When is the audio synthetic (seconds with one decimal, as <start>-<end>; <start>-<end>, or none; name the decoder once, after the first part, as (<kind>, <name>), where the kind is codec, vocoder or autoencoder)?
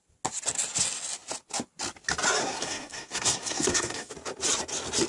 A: 2.4-4.1 (codec, SNAC)